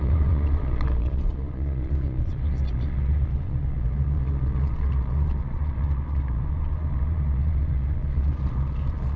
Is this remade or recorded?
remade